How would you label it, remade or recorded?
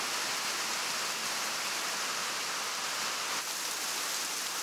recorded